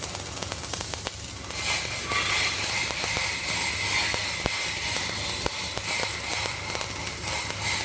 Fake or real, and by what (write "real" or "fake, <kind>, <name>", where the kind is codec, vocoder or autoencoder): real